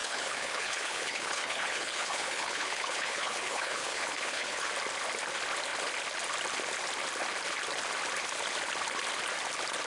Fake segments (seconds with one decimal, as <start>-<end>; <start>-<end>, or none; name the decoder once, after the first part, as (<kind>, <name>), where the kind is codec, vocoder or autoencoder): 0.0-4.7 (codec, HILCodec)